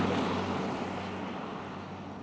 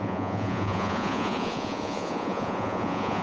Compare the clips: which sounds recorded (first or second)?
first